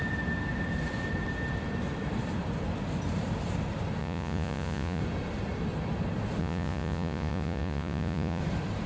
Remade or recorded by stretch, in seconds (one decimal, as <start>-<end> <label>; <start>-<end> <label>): 0.0-4.0 recorded; 4.0-5.0 remade; 5.0-6.4 recorded; 6.4-8.4 remade; 8.4-8.9 recorded